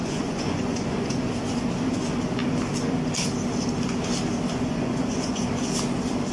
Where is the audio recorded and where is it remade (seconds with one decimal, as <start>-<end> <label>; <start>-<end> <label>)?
0.0-1.3 remade; 1.3-4.5 recorded; 4.5-5.5 remade; 5.5-6.3 recorded